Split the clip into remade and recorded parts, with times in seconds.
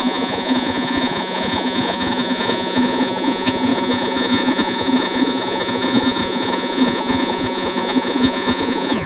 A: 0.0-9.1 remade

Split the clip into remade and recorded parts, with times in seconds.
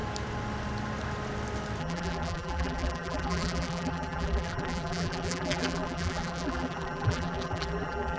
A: 0.0-1.8 recorded; 1.8-8.2 remade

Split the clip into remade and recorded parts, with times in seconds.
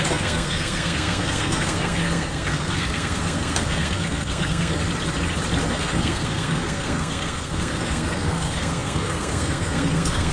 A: 0.0-4.8 remade; 4.8-5.7 recorded; 5.7-10.3 remade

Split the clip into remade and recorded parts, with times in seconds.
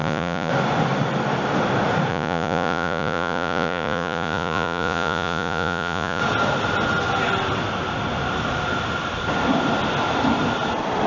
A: 0.0-0.5 remade; 0.5-2.1 recorded; 2.1-6.2 remade; 6.2-11.1 recorded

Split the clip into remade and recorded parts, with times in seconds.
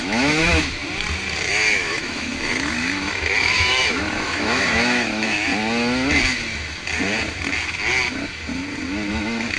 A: 0.0-0.8 remade; 0.8-1.5 recorded; 1.5-5.5 remade; 5.5-9.1 recorded; 9.1-9.6 remade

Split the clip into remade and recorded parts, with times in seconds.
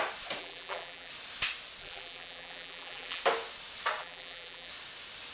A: 0.0-0.4 recorded; 0.4-1.1 remade; 1.1-1.8 recorded; 1.8-3.2 remade; 3.2-4.0 recorded; 4.0-4.7 remade; 4.7-5.3 recorded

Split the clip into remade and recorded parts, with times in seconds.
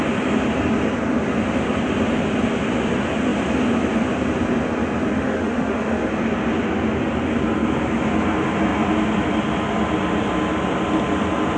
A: 0.0-5.1 recorded; 5.1-6.1 remade; 6.1-11.6 recorded